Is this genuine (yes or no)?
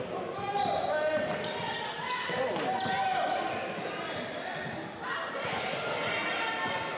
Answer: yes